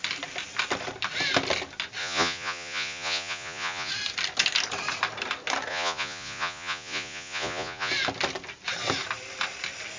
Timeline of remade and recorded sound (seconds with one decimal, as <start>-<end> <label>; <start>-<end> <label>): 0.0-2.0 recorded; 2.0-3.9 remade; 3.9-5.7 recorded; 5.7-7.9 remade; 7.9-10.0 recorded